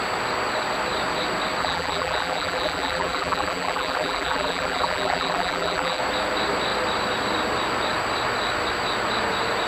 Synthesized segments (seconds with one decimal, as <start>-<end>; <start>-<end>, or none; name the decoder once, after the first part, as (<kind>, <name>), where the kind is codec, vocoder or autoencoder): 1.6-6.0 (vocoder, BigVGAN v2)